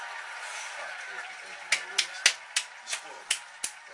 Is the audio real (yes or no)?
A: yes